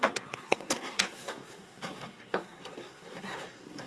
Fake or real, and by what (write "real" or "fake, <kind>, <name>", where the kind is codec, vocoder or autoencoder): fake, codec, SNAC